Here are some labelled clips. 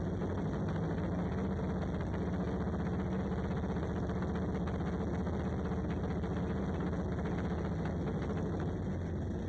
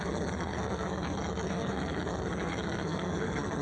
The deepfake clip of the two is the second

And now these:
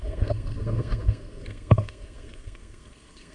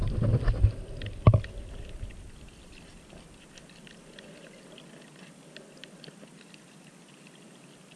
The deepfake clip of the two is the first